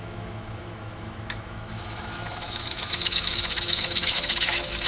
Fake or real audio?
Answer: fake